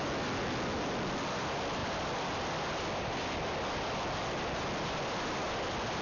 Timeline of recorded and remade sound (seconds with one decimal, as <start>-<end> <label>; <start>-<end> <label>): 0.0-6.0 recorded